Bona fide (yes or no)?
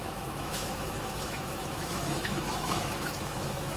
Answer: no